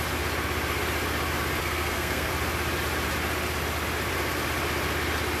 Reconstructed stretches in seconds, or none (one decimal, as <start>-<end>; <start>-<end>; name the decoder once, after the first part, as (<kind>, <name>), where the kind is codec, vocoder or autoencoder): 1.6-2.3 (codec, SNAC)

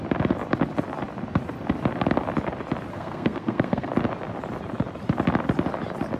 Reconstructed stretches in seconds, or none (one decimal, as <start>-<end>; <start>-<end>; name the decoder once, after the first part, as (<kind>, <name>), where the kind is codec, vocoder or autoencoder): 2.9-3.9 (codec, SNAC)

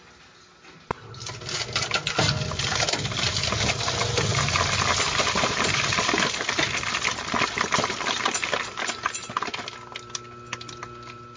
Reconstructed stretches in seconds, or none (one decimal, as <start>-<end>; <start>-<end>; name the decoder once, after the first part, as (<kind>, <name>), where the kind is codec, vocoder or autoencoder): none

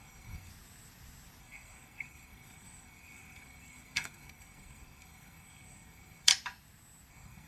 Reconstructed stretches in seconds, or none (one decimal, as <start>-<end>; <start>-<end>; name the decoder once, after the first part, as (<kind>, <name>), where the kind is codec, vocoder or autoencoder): 0.0-0.5 (codec, SNAC); 1.4-6.3; 7.1-7.5

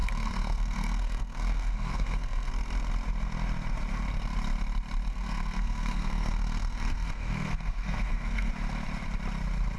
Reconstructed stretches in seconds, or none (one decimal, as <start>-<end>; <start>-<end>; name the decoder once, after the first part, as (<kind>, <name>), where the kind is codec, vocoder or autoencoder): 0.0-2.5 (codec, SNAC); 5.1-8.5